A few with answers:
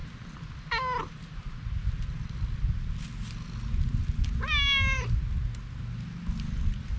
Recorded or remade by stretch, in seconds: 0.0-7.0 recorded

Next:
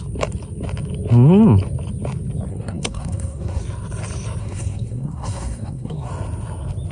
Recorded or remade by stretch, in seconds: 0.0-2.5 recorded; 2.5-3.6 remade; 3.6-4.4 recorded; 4.4-6.1 remade; 6.1-6.9 recorded

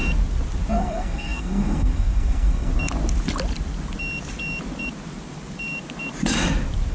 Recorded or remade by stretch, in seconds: 0.0-0.7 recorded; 0.7-2.7 remade; 2.7-6.9 recorded

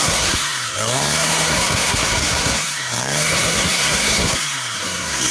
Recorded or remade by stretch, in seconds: 0.0-5.3 remade

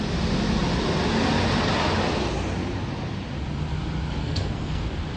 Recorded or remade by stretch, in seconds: 0.0-4.2 recorded; 4.2-4.8 remade; 4.8-5.2 recorded

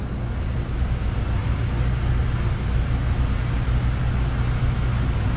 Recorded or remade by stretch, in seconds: 0.0-5.4 recorded

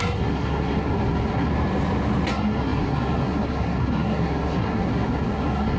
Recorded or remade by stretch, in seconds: 0.0-1.5 remade; 1.5-2.3 recorded; 2.3-5.8 remade